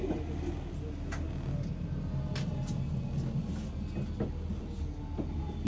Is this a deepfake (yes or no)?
no